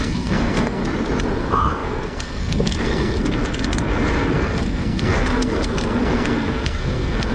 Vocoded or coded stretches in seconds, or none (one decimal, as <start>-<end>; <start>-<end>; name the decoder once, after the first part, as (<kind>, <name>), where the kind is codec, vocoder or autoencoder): 0.0-0.8 (codec, SNAC); 1.4-7.3